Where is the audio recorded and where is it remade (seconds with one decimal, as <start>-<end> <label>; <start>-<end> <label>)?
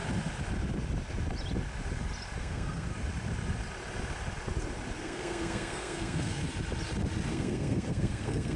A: 0.0-2.4 recorded; 2.4-2.9 remade; 2.9-5.0 recorded; 5.0-6.4 remade; 6.4-7.3 recorded; 7.3-8.6 remade